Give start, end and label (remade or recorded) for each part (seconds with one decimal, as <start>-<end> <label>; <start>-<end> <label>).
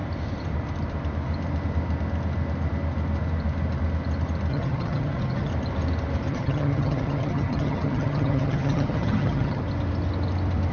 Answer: 0.0-4.5 recorded; 4.5-5.5 remade; 5.5-6.3 recorded; 6.3-9.6 remade; 9.6-10.7 recorded